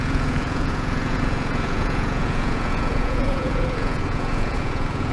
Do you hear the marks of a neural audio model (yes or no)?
yes